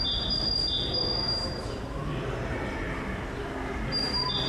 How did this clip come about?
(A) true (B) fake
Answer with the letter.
A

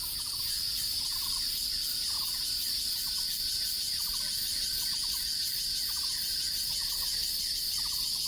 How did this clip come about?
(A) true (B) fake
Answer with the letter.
A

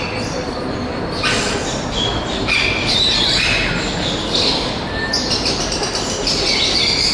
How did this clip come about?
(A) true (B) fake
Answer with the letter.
A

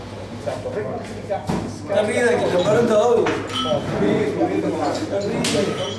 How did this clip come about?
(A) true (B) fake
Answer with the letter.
A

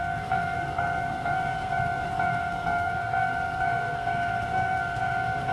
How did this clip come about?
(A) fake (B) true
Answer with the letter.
A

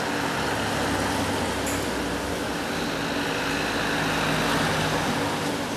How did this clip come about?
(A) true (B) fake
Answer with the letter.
A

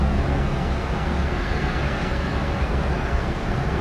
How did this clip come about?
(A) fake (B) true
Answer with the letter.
A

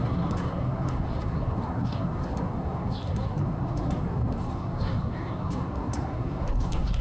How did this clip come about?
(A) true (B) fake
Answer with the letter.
B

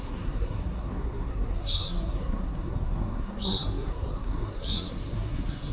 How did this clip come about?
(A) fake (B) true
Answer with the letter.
A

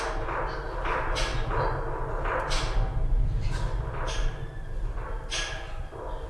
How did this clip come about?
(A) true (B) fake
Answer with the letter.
A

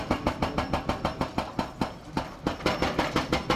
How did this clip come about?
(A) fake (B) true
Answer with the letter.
B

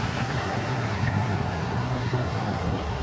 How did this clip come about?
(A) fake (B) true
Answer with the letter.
A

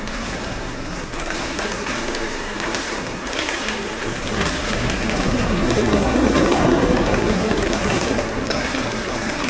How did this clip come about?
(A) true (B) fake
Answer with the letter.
B